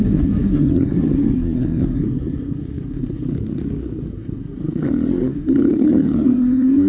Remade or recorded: remade